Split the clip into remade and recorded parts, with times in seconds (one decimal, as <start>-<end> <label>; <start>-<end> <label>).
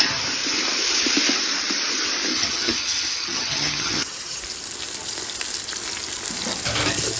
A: 0.0-2.3 recorded; 2.3-4.4 remade; 4.4-7.2 recorded